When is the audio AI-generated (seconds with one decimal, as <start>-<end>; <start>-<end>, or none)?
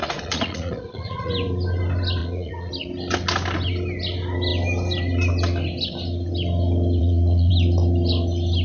0.0-1.3; 2.2-2.7; 7.0-7.5